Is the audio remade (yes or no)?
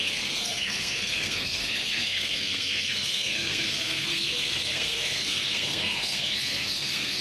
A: yes